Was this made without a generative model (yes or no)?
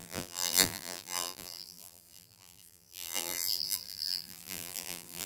no